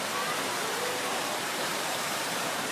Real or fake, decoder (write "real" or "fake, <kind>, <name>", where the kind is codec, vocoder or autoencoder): fake, vocoder, BigVGAN v2